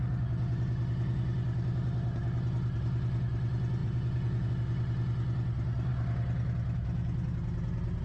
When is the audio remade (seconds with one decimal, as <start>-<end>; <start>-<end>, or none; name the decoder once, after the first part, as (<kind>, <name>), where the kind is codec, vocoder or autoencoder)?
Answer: 3.8-4.5 (vocoder, Vocos)